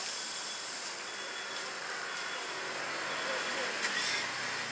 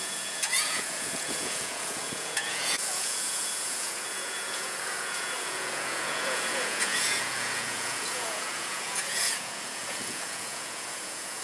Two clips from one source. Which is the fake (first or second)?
second